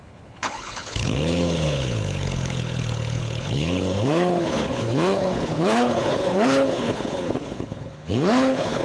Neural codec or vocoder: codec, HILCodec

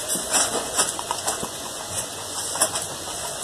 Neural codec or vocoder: vocoder, Vocos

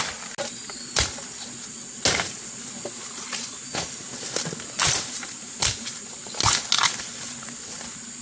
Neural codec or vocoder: none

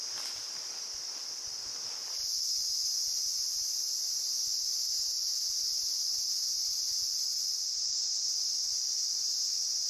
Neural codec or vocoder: vocoder, BigVGAN v2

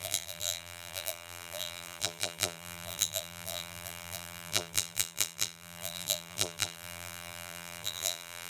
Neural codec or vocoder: vocoder, BigVGAN v2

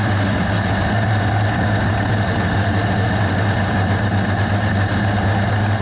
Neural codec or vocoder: none